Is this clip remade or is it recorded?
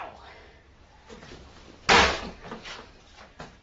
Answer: recorded